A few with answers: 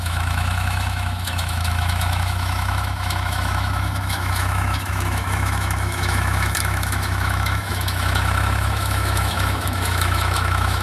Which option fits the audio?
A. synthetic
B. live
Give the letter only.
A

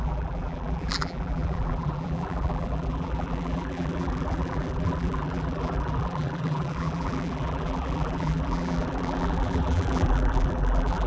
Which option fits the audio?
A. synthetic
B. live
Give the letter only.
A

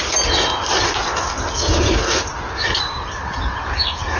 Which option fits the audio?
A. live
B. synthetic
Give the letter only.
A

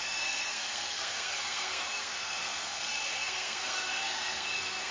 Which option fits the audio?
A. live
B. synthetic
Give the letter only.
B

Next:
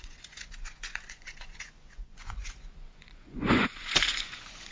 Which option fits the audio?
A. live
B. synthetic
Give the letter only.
B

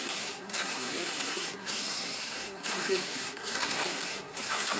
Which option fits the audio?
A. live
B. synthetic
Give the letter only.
B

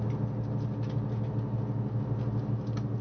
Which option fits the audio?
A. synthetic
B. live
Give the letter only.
B